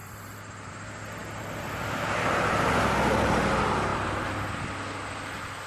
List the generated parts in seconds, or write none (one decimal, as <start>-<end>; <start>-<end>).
0.0-0.7